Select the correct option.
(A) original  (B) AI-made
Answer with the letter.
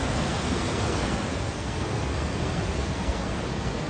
B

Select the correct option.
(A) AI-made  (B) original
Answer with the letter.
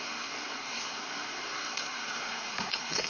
A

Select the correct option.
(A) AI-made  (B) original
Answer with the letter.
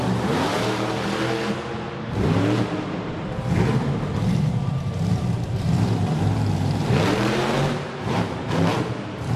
A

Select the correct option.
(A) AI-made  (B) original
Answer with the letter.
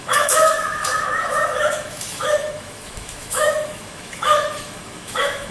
A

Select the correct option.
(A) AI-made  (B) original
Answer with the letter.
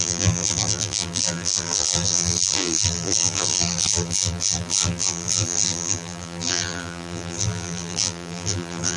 A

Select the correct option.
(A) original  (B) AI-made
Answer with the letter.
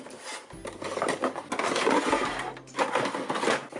A